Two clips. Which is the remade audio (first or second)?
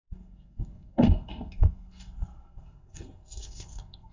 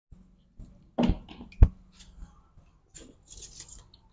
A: first